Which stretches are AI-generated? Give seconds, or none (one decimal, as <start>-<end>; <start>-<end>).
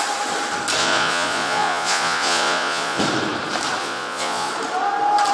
0.8-3.0; 3.8-4.5